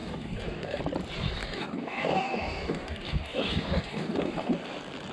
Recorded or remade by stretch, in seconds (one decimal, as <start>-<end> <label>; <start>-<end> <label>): 0.0-0.8 remade; 0.8-1.4 recorded; 1.4-4.5 remade; 4.5-5.1 recorded